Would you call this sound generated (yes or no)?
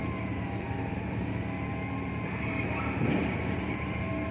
no